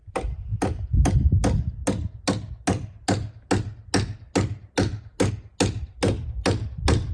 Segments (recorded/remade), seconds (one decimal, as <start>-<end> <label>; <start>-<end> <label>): 0.0-7.1 recorded